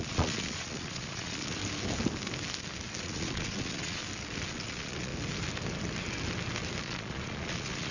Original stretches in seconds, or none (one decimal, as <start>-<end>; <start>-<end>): 1.6-3.0; 4.0-4.5; 5.1-6.8